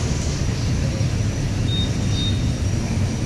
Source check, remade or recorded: recorded